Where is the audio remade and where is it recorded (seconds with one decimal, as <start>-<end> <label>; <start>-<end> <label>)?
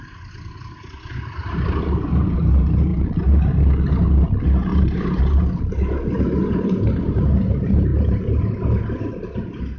0.0-4.7 recorded; 4.7-5.2 remade; 5.2-7.9 recorded; 7.9-8.4 remade; 8.4-9.8 recorded